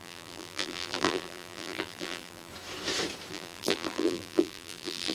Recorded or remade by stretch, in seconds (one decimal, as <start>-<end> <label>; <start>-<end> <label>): 0.0-2.5 remade; 2.5-3.3 recorded; 3.3-5.1 remade